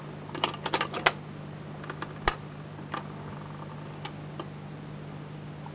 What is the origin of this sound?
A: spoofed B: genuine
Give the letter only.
B